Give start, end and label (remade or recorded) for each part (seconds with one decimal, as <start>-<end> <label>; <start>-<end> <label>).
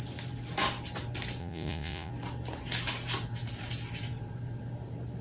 0.0-1.4 recorded; 1.4-2.1 remade; 2.1-5.2 recorded